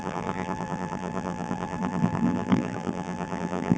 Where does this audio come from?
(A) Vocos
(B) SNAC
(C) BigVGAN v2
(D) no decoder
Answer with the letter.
C